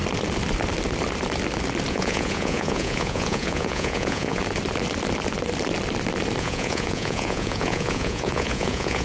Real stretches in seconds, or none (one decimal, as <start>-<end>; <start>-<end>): 0.0-1.9; 4.4-6.4